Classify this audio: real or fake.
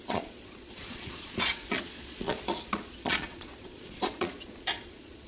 fake